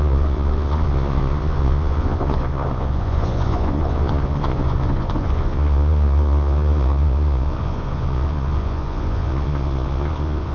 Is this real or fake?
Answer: fake